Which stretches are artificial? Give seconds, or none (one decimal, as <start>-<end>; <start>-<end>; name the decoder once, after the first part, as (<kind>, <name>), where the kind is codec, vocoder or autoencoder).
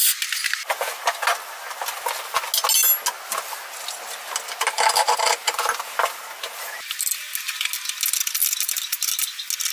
none